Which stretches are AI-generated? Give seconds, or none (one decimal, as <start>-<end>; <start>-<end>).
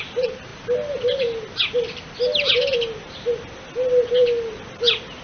none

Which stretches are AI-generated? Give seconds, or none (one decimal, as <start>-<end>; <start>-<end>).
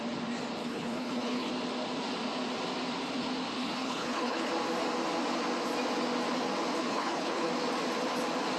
0.6-1.5; 3.6-4.5; 6.8-7.5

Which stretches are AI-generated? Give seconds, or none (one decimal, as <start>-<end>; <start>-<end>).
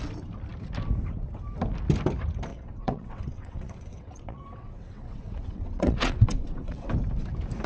2.5-6.9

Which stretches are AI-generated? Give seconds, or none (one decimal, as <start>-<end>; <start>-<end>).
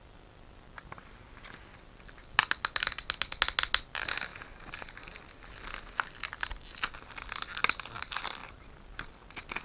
none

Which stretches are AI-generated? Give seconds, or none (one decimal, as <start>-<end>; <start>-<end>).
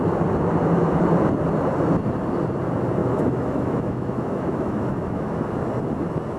3.0-5.4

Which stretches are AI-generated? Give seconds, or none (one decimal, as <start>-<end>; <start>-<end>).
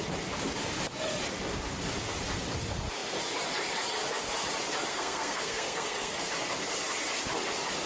4.9-6.3